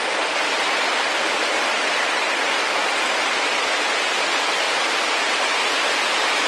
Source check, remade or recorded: recorded